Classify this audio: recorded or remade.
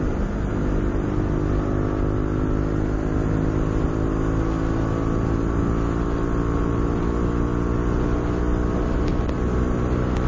recorded